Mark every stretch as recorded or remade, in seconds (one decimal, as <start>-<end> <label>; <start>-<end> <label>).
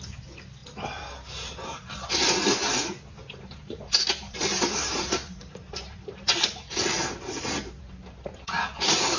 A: 0.0-0.6 remade; 0.6-3.1 recorded; 3.1-9.2 remade